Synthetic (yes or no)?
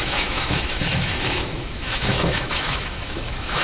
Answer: yes